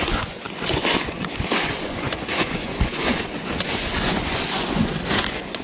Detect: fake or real fake